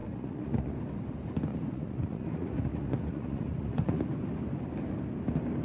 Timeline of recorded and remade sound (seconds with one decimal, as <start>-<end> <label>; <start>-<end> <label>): 0.0-0.7 remade; 0.7-1.5 recorded; 1.5-4.0 remade; 4.0-5.6 recorded